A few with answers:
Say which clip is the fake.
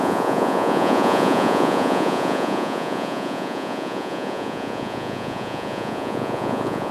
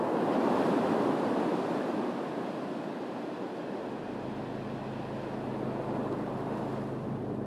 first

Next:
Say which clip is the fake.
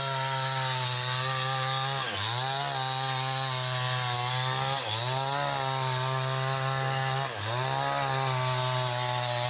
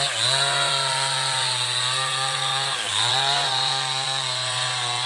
second